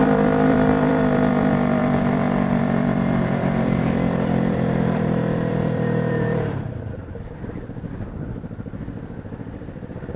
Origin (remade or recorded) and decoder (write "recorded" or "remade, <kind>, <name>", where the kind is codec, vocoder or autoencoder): remade, vocoder, BigVGAN v2